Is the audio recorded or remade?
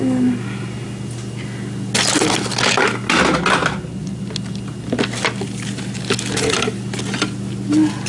recorded